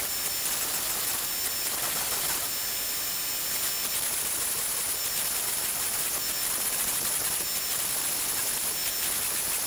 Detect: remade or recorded recorded